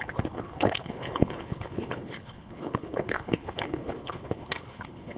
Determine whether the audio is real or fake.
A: fake